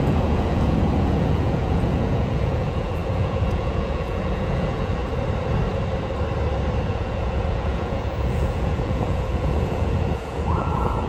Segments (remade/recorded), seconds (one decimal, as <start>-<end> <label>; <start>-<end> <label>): 0.0-5.0 remade; 5.0-6.8 recorded; 6.8-11.1 remade